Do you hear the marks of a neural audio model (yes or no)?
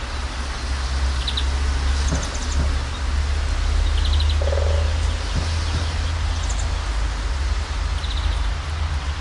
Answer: no